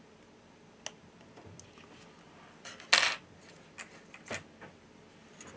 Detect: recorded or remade recorded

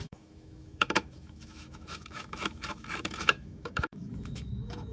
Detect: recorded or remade remade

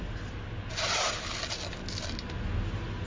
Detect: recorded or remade recorded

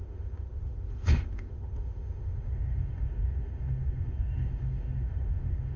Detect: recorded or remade remade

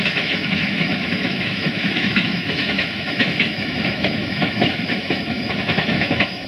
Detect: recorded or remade remade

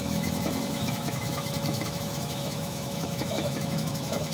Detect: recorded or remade remade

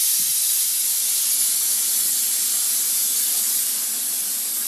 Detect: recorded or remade recorded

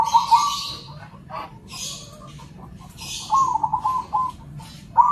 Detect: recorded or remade recorded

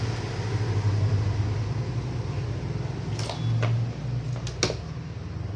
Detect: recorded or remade recorded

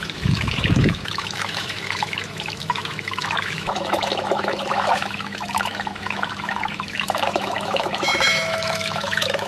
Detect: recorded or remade remade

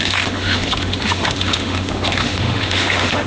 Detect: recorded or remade remade